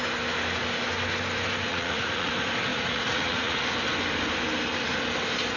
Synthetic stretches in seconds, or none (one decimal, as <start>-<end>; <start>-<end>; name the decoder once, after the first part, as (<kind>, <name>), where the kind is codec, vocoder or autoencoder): 1.7-2.3 (vocoder, Vocos); 2.7-3.6